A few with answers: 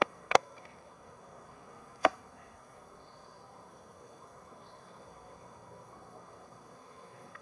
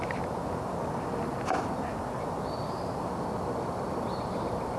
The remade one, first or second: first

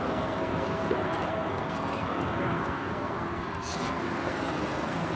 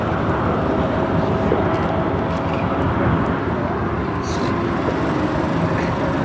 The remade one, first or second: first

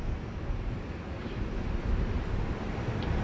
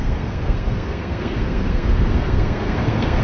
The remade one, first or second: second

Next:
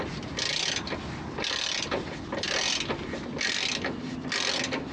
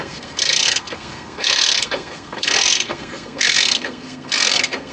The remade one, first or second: second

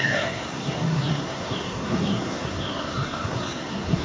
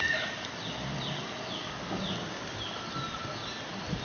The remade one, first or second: first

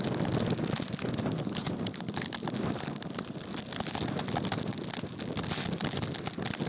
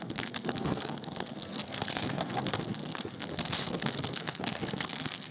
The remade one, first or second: second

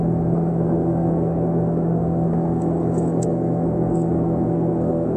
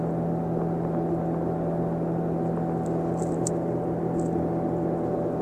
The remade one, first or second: first